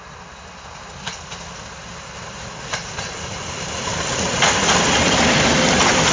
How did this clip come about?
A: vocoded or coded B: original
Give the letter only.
B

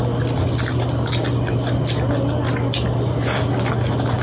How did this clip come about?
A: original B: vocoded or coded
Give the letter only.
A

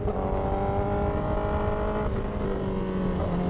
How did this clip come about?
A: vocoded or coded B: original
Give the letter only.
B